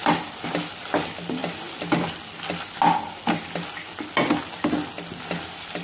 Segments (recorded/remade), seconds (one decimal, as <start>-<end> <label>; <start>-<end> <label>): 0.0-5.8 recorded